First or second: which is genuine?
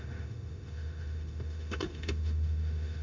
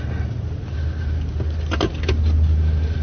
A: second